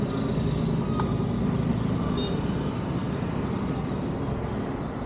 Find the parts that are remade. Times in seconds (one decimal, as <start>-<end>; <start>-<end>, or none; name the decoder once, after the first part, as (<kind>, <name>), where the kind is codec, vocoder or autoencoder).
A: none